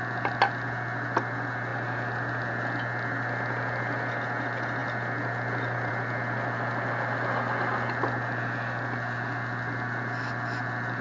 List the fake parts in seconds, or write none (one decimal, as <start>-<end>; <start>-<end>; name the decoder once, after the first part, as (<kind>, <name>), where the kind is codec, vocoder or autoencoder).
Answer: none

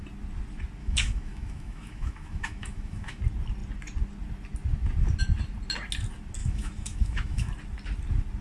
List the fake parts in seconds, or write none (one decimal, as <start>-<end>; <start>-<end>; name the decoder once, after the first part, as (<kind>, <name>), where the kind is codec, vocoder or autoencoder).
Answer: 0.8-3.2 (autoencoder, DAC-VAE); 6.4-7.5

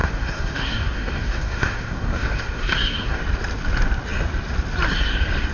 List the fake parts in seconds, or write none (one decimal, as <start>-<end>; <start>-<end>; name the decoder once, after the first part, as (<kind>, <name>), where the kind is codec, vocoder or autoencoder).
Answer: 0.0-3.2 (codec, SNAC)

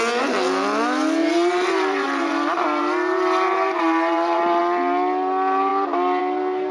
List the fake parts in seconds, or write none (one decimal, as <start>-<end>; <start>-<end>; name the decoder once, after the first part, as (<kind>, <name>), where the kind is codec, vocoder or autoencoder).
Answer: 1.2-4.6 (vocoder, BigVGAN v2)

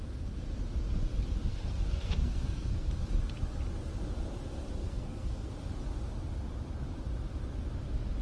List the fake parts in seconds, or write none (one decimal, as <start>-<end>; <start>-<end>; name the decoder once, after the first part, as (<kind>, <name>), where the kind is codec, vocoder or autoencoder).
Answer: 1.5-2.9 (codec, SNAC); 4.8-5.5

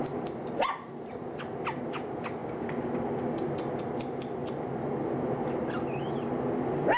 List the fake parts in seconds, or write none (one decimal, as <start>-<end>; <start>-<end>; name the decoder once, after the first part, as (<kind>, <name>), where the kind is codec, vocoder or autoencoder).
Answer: none